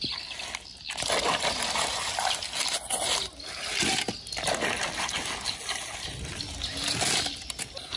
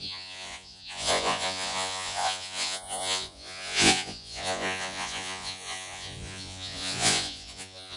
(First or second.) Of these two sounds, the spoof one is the second